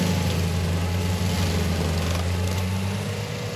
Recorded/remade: recorded